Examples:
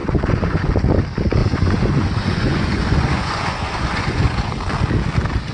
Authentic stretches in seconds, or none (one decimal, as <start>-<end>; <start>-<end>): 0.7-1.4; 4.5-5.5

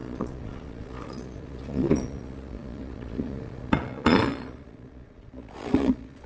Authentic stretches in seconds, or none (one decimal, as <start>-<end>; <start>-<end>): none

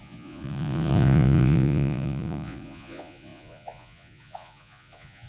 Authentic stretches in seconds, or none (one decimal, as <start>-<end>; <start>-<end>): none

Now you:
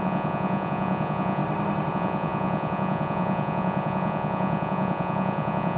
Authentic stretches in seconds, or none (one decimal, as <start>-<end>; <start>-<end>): 1.4-1.9